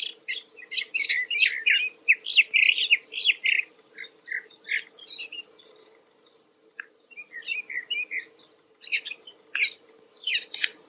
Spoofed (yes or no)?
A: no